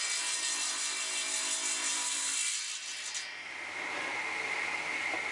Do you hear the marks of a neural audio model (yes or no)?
no